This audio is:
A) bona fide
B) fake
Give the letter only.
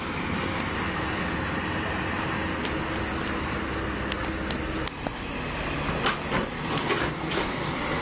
A